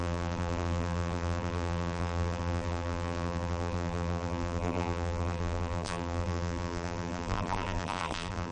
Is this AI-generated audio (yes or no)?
yes